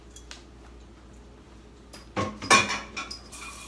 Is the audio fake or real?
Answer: real